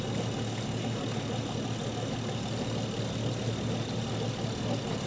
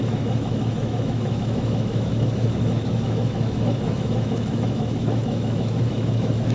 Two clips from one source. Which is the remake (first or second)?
second